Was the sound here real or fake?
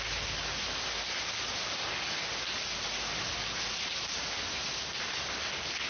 real